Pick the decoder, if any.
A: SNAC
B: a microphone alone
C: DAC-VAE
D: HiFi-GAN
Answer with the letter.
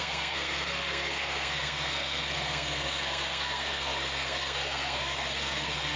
A